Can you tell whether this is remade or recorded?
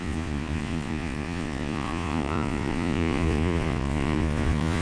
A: remade